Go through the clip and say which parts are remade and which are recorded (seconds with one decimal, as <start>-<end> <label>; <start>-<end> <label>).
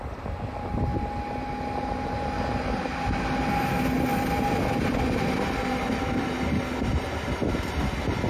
0.0-8.3 recorded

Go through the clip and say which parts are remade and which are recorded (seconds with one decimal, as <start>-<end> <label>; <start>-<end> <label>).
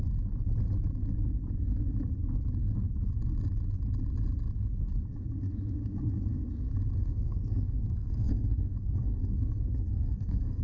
0.0-7.0 recorded; 7.0-10.6 remade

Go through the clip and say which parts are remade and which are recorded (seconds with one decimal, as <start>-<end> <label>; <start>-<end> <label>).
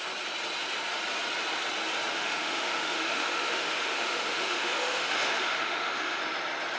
0.0-2.1 recorded; 2.1-6.2 remade; 6.2-6.8 recorded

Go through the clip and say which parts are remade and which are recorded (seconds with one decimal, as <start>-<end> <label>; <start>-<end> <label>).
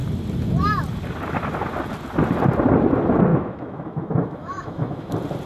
0.0-3.3 recorded; 3.3-5.1 remade; 5.1-5.5 recorded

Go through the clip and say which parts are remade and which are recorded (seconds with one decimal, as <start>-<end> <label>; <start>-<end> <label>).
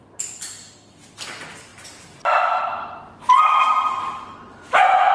0.0-1.7 recorded; 1.7-5.1 remade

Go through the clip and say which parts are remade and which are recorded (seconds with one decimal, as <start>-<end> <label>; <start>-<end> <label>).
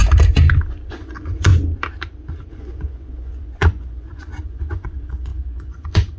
0.0-0.9 recorded; 0.9-1.5 remade; 1.5-2.5 recorded; 2.5-6.2 remade